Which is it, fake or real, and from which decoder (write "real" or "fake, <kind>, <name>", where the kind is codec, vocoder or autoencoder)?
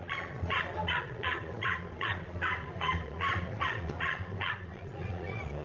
fake, vocoder, Vocos